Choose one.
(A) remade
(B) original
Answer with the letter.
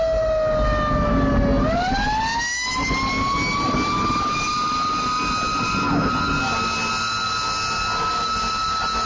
B